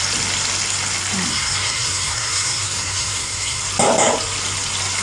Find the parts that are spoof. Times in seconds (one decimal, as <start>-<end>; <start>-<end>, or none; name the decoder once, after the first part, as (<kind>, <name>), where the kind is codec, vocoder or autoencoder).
1.3-3.6 (codec, SNAC)